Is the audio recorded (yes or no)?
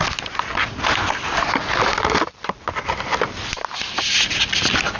yes